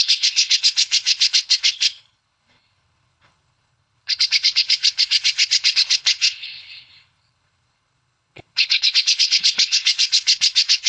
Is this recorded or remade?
remade